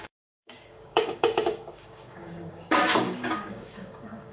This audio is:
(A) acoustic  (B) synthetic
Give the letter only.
B